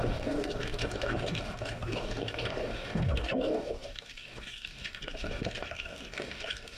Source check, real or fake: fake